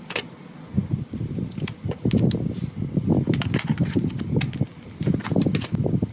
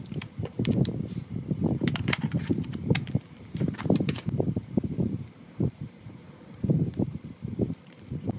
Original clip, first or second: first